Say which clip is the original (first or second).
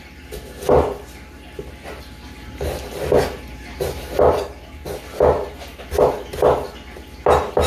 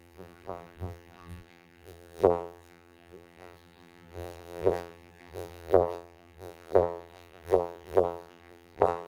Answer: first